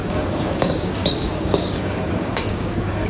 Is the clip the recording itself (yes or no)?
no